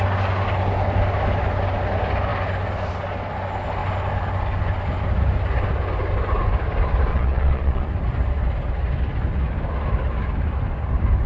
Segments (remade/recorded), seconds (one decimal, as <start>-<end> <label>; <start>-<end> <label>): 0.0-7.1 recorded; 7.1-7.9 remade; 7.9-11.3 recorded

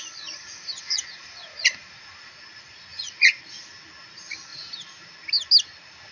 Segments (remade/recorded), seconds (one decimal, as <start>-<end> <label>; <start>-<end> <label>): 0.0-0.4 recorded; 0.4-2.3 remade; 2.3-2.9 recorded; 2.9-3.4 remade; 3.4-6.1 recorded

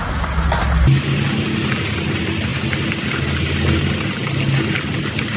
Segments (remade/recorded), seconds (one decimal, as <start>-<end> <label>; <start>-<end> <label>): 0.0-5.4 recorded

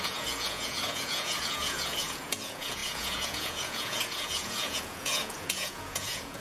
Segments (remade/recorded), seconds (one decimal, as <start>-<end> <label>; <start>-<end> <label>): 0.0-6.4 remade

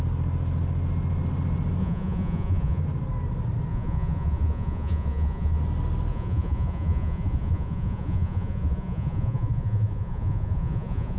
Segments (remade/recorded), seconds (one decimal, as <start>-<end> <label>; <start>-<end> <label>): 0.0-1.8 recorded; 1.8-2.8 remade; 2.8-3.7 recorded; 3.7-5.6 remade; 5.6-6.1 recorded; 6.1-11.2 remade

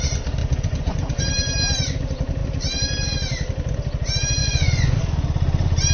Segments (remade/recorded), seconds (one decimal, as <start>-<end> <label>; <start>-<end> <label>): 0.0-0.4 recorded; 0.4-1.2 remade; 1.2-4.4 recorded; 4.4-5.0 remade; 5.0-5.9 recorded

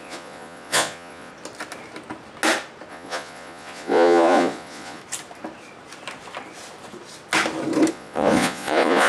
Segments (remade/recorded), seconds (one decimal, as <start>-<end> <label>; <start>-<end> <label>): 0.0-1.3 remade; 1.3-2.9 recorded; 2.9-5.0 remade; 5.0-7.9 recorded; 7.9-9.1 remade